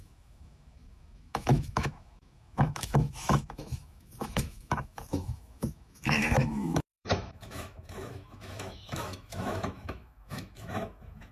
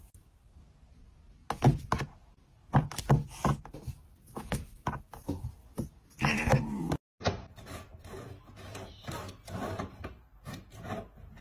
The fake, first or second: first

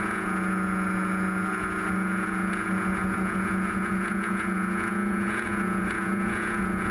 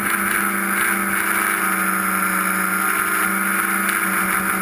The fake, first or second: first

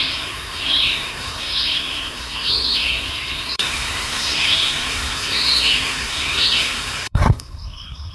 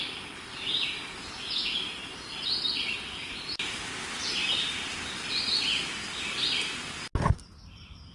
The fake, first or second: first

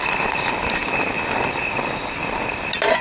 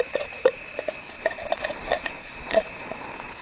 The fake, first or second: second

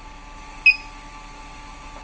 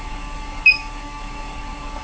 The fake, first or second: second